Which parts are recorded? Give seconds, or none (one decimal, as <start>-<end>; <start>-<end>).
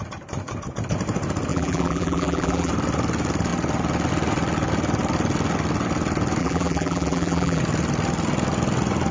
0.0-1.5; 2.7-6.4; 7.6-9.1